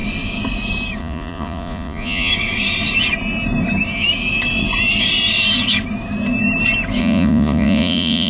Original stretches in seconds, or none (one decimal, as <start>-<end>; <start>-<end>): 0.0-1.0; 2.3-7.0